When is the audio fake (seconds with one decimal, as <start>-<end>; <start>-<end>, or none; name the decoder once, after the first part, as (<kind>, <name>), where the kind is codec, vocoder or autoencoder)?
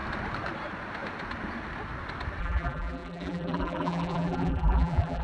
2.4-5.2 (vocoder, BigVGAN v2)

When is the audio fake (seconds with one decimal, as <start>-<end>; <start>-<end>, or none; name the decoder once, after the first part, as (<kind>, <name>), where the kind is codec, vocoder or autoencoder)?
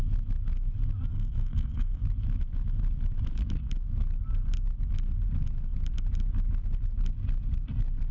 1.1-2.0 (codec, SNAC)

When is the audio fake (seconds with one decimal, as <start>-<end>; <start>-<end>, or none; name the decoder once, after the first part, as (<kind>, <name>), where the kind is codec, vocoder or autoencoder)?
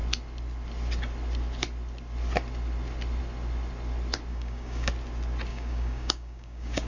4.3-4.9 (codec, DAC); 5.5-6.9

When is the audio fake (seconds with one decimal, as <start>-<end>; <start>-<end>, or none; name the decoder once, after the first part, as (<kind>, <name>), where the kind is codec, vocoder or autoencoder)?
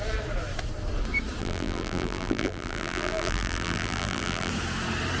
1.4-4.5 (vocoder, BigVGAN v2)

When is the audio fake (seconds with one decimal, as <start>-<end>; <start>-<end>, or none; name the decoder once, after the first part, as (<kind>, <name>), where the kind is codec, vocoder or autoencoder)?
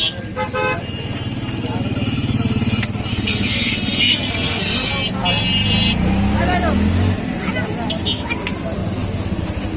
3.1-4.9 (codec, SNAC)